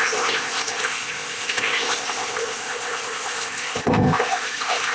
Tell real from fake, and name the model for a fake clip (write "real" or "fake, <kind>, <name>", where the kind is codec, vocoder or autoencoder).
fake, codec, ZipCodec